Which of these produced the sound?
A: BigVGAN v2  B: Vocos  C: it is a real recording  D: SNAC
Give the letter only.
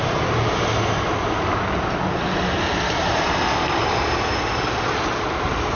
C